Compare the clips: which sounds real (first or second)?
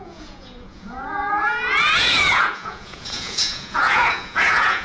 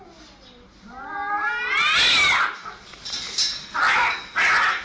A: second